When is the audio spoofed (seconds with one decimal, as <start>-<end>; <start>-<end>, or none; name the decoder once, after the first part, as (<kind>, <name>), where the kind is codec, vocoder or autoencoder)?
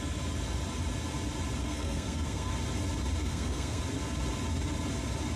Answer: 1.6-2.5 (codec, SNAC); 3.2-3.8